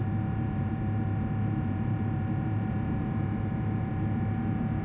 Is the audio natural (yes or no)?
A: no